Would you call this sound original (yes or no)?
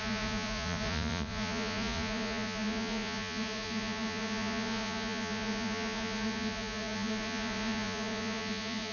no